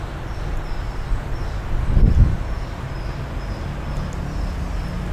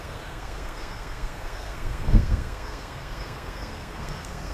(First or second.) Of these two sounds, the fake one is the second